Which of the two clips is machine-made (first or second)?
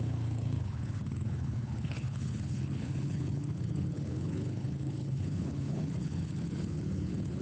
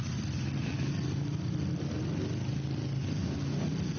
first